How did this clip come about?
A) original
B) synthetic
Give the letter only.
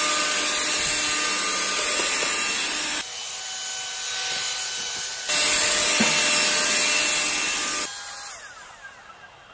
A